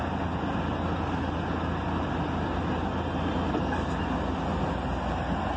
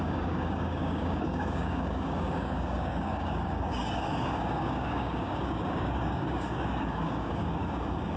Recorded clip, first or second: first